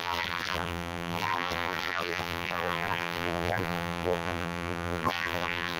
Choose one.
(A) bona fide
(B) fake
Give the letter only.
B